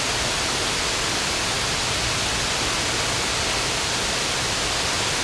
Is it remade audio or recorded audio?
recorded